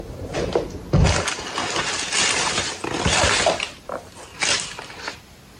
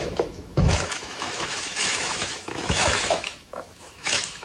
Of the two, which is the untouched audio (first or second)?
first